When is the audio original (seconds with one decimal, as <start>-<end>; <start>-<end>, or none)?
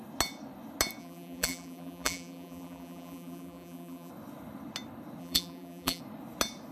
0.0-1.0; 4.1-5.2; 6.0-6.7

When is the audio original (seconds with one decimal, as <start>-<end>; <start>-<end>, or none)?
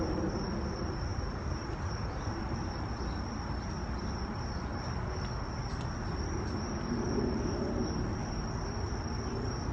0.0-1.1; 2.4-9.7